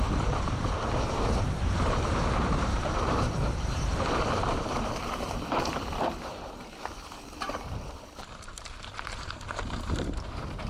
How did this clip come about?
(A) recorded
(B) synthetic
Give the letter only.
B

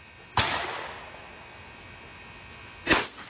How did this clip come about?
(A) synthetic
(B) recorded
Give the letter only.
B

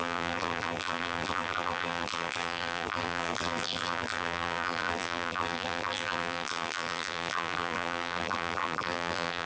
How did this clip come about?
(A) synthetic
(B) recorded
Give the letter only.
A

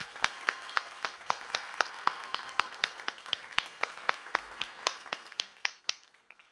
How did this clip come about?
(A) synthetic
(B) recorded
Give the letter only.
A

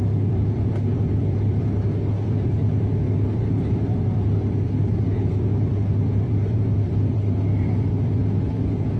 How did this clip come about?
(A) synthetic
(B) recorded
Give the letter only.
A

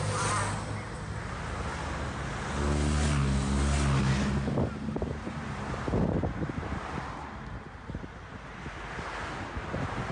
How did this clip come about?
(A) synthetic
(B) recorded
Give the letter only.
B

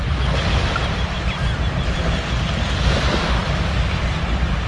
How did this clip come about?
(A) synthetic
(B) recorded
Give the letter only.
B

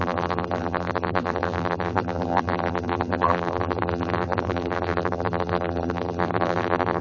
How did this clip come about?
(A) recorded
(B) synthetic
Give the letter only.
B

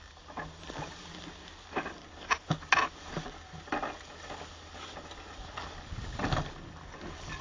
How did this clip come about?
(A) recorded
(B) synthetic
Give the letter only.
A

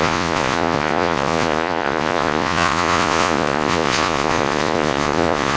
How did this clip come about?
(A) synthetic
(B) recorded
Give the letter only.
A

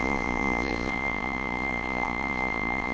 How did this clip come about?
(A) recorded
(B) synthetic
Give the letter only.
B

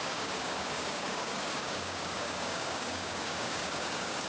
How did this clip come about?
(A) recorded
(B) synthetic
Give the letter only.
B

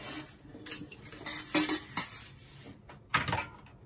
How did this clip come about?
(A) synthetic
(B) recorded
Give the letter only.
B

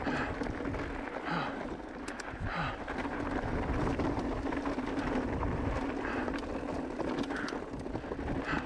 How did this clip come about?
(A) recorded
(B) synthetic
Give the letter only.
A